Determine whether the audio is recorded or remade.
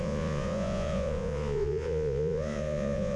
remade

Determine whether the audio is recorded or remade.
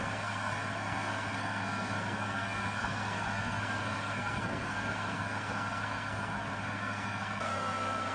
remade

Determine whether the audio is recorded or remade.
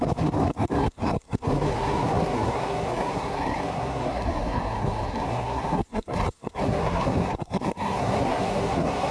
remade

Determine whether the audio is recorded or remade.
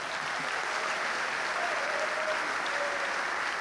recorded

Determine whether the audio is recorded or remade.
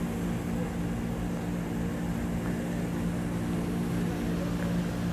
recorded